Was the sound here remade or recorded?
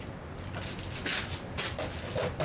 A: recorded